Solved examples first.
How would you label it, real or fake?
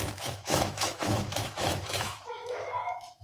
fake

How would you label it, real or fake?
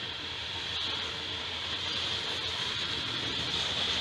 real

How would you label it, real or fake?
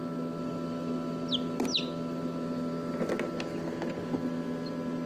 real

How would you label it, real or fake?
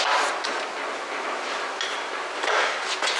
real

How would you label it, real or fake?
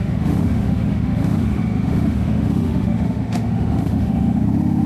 fake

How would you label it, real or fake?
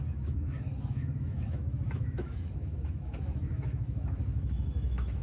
fake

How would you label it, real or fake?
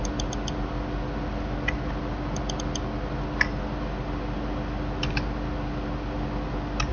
real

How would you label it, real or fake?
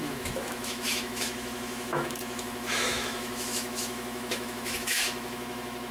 fake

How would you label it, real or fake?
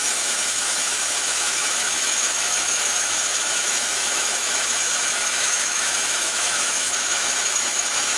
fake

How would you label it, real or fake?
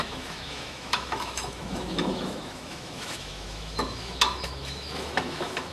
fake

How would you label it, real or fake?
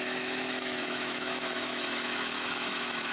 fake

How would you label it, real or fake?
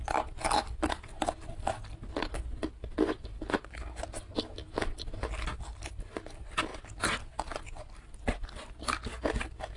real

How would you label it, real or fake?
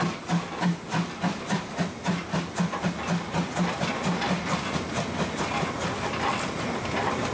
real